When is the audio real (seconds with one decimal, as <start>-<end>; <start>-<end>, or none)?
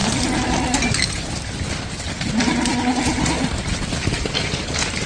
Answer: 0.0-5.1